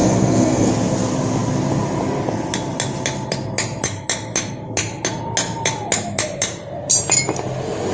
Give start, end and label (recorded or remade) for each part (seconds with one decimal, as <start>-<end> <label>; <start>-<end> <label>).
0.0-0.7 remade; 0.7-7.9 recorded